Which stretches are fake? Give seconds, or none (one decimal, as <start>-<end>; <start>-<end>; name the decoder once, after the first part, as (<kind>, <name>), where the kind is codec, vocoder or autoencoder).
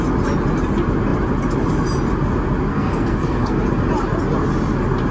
2.7-3.6 (codec, SNAC)